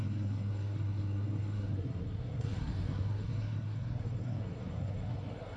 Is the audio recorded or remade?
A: remade